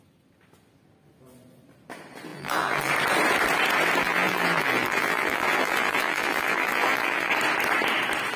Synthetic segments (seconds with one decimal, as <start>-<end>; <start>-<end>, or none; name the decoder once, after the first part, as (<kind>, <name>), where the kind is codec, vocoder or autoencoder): 2.3-2.9 (vocoder, BigVGAN v2); 4.0-7.3